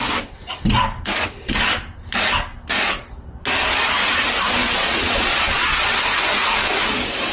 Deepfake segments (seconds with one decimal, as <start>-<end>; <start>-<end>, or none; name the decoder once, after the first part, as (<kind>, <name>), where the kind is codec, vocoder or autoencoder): 4.6-6.0 (vocoder, Vocos)

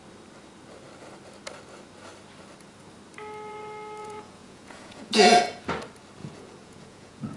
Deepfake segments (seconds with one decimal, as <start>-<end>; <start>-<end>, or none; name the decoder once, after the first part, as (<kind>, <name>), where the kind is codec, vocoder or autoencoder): 4.0-5.6 (vocoder, Vocos); 6.2-7.4